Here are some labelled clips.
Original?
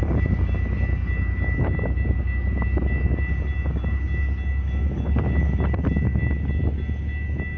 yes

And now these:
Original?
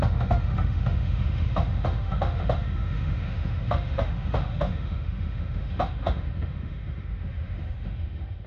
no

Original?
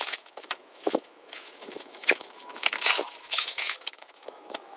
no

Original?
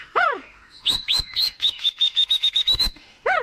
no